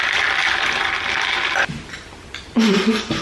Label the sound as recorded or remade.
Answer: recorded